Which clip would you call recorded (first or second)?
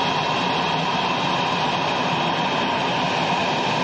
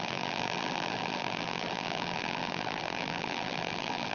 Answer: first